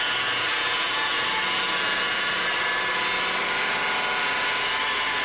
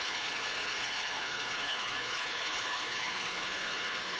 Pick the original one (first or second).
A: first